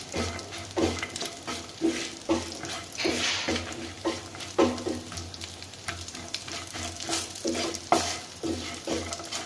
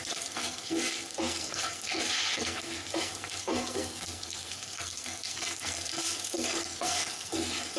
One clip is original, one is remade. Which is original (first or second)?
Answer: first